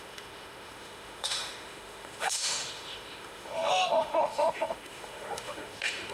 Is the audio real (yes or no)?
no